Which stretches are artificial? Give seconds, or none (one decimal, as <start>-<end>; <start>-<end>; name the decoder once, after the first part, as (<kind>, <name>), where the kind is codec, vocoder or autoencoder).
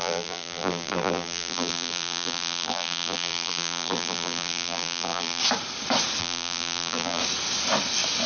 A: 0.0-5.4 (vocoder, BigVGAN v2); 6.2-7.2